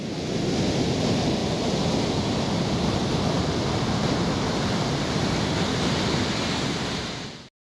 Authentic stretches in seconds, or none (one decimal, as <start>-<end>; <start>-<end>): 0.0-7.6